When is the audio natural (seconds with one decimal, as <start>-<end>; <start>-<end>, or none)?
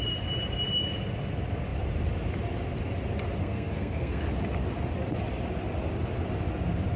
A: 0.0-3.4; 4.2-7.0